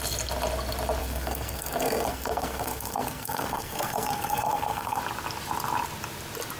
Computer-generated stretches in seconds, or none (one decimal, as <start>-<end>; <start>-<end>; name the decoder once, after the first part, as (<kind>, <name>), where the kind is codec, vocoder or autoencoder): 1.0-5.0 (codec, SNAC)